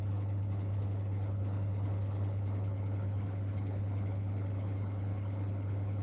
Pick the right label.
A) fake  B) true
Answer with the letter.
A